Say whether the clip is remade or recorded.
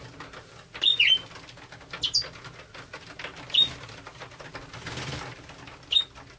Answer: recorded